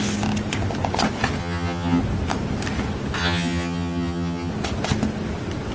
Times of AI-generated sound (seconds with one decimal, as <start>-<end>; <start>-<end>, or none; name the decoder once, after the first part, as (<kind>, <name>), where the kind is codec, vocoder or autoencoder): 1.4-2.0 (vocoder, HiFi-GAN); 3.2-4.5